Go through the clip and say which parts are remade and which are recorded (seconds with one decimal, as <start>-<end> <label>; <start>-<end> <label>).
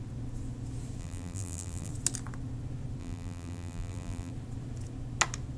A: 0.0-1.0 recorded; 1.0-1.9 remade; 1.9-3.0 recorded; 3.0-4.3 remade; 4.3-5.6 recorded